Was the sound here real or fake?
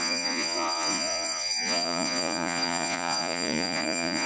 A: fake